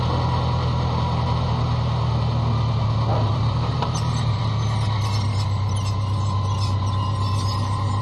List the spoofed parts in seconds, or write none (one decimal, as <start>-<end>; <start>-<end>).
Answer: 3.1-4.5